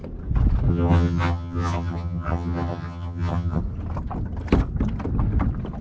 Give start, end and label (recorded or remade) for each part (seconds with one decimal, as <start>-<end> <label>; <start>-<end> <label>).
0.0-0.7 recorded; 0.7-3.6 remade; 3.6-5.8 recorded

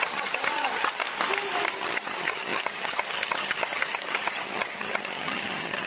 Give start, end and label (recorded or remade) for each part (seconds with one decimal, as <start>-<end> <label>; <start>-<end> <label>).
0.0-1.0 remade; 1.0-1.7 recorded; 1.7-5.9 remade